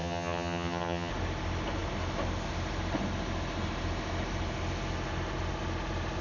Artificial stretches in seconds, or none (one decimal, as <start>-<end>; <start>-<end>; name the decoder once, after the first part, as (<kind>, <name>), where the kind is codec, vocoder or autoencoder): 0.0-1.1 (vocoder, HiFi-GAN)

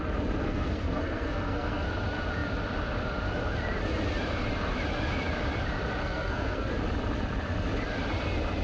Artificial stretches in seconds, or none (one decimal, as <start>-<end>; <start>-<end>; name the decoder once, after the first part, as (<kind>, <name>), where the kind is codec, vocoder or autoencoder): 0.4-1.9 (codec, SNAC); 6.0-6.7

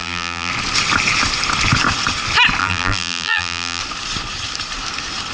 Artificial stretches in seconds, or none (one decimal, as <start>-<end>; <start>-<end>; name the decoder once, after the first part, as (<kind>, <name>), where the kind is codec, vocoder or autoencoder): 0.0-0.5 (vocoder, BigVGAN v2); 2.6-3.8

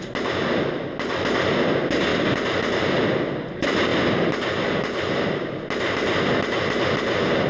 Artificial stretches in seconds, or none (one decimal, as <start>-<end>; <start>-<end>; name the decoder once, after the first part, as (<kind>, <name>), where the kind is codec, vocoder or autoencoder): none

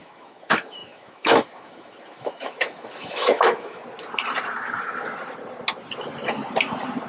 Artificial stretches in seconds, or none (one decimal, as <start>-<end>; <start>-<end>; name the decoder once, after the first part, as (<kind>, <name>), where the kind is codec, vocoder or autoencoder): 0.0-3.8 (autoencoder, DAC-VAE)